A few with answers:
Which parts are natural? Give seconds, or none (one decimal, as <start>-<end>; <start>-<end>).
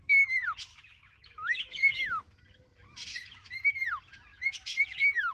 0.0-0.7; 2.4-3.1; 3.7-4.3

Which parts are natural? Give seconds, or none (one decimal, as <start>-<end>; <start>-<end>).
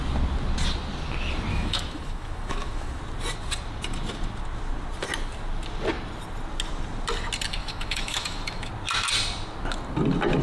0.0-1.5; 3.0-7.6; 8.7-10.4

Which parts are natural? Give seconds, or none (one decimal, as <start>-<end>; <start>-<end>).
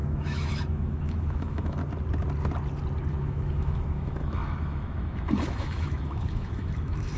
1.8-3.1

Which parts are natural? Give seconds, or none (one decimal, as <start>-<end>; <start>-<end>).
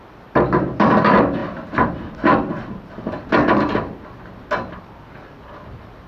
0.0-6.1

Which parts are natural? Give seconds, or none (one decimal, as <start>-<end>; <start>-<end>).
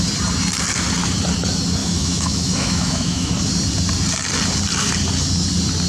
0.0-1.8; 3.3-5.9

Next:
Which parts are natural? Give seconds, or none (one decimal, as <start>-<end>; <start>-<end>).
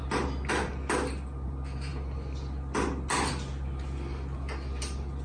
0.0-5.2